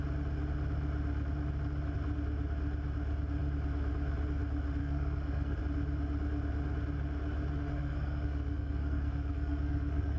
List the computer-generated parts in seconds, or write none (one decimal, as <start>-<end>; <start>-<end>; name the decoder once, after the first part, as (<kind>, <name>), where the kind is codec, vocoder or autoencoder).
4.8-5.6 (codec, SNAC); 7.6-10.2